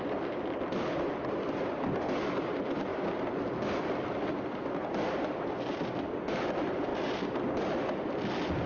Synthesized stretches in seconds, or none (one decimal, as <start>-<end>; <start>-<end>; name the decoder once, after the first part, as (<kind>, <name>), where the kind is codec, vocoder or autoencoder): none